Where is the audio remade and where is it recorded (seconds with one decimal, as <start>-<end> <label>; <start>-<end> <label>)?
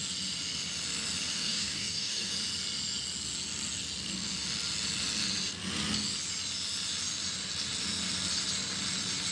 0.0-1.3 recorded; 1.3-2.3 remade; 2.3-9.3 recorded